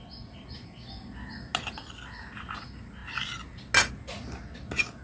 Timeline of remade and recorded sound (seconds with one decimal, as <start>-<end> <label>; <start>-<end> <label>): 0.0-5.0 recorded